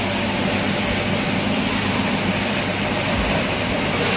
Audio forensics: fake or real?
real